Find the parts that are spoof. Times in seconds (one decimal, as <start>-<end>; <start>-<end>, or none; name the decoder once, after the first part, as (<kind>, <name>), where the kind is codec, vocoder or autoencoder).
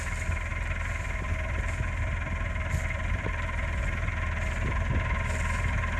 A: none